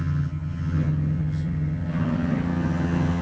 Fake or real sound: fake